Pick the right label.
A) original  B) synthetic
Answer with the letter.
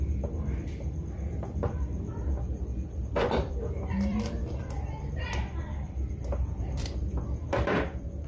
B